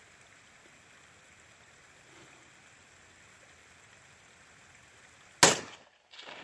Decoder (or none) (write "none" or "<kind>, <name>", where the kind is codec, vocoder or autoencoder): none